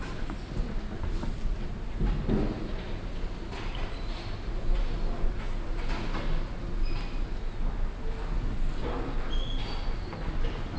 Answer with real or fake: real